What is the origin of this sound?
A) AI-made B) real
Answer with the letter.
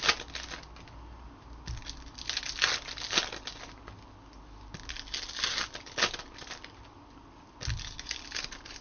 B